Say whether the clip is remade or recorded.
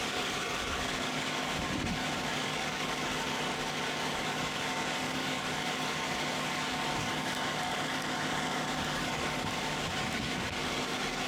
remade